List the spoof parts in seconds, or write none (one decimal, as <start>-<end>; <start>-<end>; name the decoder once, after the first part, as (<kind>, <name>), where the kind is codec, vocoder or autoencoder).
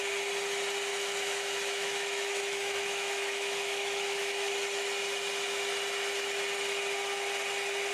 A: 0.9-4.5 (autoencoder, DAC-VAE)